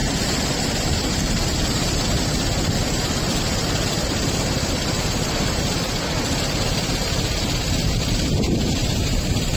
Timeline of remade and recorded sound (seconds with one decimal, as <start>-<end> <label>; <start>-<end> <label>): 0.0-1.1 remade; 1.1-9.6 recorded